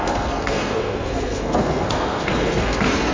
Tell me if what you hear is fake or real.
fake